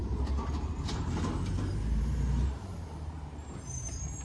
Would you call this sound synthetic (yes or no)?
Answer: yes